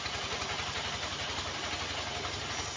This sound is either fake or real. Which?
real